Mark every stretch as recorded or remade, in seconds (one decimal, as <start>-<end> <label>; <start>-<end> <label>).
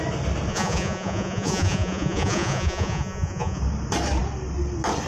0.0-0.5 recorded; 0.5-3.6 remade; 3.6-5.1 recorded